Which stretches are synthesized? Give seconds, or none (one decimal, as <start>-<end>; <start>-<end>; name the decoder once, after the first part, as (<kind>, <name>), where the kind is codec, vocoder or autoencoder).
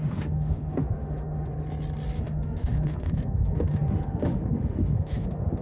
0.0-1.5 (autoencoder, DAC-VAE); 2.2-5.6